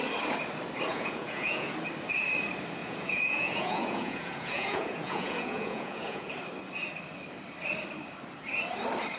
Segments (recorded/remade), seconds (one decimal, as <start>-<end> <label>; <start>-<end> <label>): 0.0-0.9 recorded; 0.9-1.7 remade; 1.7-2.8 recorded; 2.8-6.3 remade; 6.3-9.2 recorded